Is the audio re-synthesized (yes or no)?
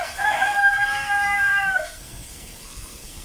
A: yes